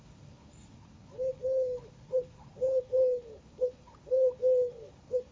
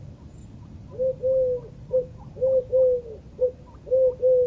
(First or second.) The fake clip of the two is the first